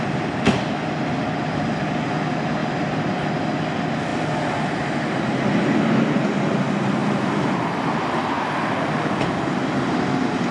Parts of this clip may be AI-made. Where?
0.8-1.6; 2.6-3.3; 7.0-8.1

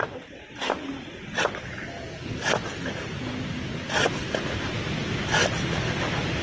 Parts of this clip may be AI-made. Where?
none